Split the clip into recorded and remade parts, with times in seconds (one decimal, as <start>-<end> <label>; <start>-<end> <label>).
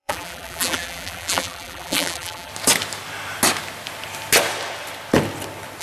0.0-2.5 remade; 2.5-5.8 recorded